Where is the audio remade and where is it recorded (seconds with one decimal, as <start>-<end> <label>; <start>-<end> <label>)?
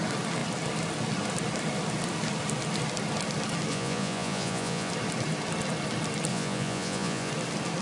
0.0-3.7 recorded; 3.7-4.9 remade; 4.9-6.3 recorded; 6.3-7.3 remade; 7.3-7.8 recorded